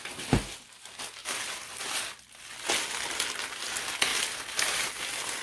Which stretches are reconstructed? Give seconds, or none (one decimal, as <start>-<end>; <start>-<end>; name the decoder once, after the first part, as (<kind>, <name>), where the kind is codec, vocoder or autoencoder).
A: 1.2-2.0 (vocoder, BigVGAN v2); 4.1-4.9